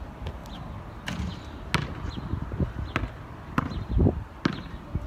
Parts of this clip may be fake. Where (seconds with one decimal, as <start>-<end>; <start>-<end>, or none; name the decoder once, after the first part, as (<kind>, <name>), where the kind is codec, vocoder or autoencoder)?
none